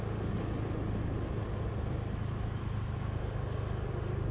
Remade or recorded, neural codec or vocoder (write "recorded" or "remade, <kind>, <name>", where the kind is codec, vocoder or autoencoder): recorded